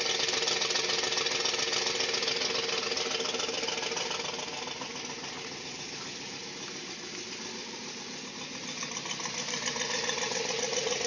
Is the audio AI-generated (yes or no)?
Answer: no